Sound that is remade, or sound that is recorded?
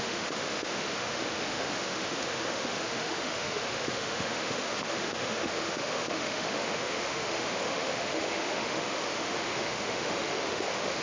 remade